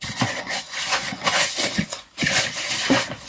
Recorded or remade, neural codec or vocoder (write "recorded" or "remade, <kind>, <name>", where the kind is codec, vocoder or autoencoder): remade, vocoder, Vocos